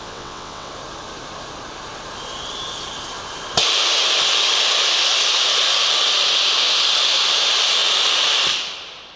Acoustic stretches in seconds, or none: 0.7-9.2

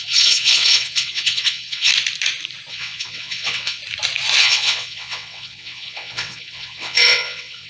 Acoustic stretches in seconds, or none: 1.9-2.7; 3.8-4.4

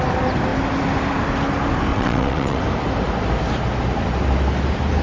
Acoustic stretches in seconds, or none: 0.0-1.9; 2.6-5.0

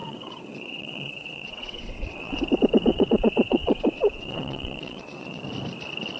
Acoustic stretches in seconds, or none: 2.4-2.9; 5.4-6.2

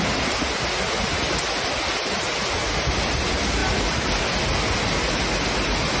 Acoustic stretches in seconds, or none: 0.0-6.0

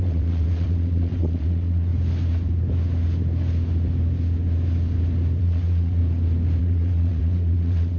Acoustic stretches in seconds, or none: 1.9-5.4; 6.0-6.6

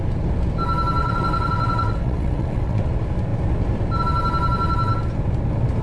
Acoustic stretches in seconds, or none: 0.0-1.0; 2.8-5.8